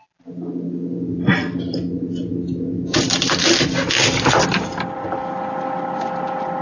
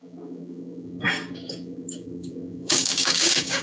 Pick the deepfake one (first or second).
second